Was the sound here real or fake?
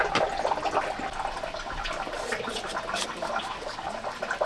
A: real